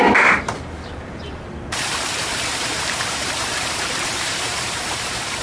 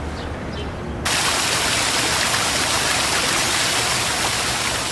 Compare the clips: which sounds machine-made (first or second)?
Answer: first